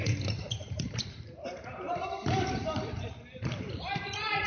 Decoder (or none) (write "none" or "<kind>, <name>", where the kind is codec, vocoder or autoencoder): vocoder, BigVGAN v2